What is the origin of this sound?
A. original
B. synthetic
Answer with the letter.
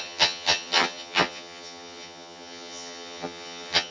B